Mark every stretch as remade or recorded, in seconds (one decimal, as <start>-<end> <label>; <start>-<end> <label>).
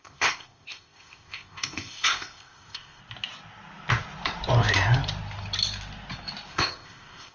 0.0-3.0 remade; 3.0-6.5 recorded; 6.5-7.3 remade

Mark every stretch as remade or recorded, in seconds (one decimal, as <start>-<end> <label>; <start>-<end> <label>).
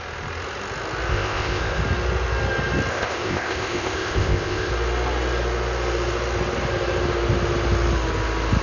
0.0-1.1 recorded; 1.1-1.8 remade; 1.8-2.9 recorded; 2.9-4.7 remade; 4.7-8.6 recorded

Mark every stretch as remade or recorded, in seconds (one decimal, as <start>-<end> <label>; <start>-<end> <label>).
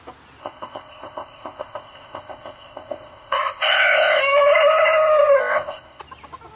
0.0-0.4 recorded; 0.4-4.2 remade; 4.2-5.4 recorded; 5.4-6.0 remade; 6.0-6.6 recorded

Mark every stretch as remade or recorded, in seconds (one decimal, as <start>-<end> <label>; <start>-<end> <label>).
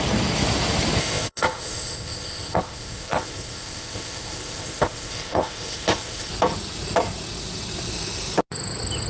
0.0-1.0 recorded; 1.0-6.3 remade; 6.3-9.1 recorded